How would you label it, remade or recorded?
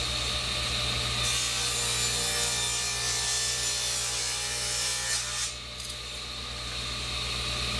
recorded